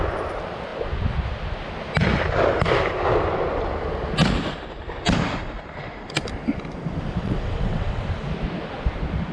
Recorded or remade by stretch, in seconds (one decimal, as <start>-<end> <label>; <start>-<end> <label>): 0.0-7.2 recorded; 7.2-8.0 remade; 8.0-9.3 recorded